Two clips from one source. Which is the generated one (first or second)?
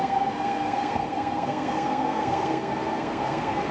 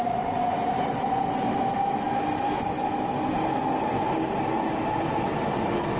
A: first